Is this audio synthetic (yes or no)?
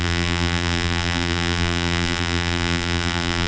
yes